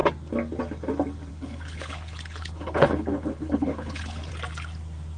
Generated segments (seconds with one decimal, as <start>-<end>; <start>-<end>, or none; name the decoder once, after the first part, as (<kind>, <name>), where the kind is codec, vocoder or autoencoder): 1.3-4.3 (codec, HILCodec)